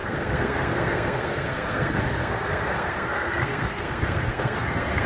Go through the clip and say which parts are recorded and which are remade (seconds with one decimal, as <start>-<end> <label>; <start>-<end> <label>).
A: 0.0-5.1 remade